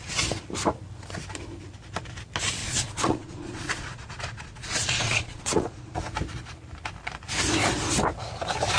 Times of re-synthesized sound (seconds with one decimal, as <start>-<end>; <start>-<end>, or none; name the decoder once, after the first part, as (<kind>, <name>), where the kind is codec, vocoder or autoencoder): 2.6-6.0 (vocoder, Vocos)